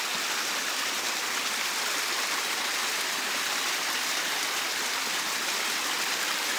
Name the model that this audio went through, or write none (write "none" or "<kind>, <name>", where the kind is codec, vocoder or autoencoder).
none